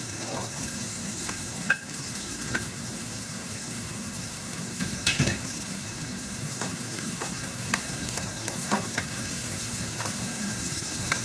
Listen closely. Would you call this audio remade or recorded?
remade